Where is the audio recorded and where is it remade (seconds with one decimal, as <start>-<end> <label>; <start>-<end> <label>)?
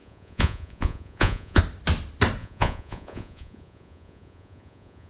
0.0-1.6 remade; 1.6-2.4 recorded; 2.4-5.1 remade